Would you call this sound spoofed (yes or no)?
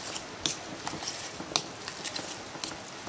no